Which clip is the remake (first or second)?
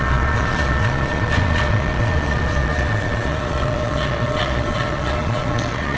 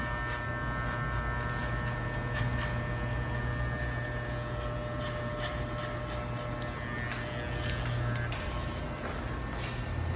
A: first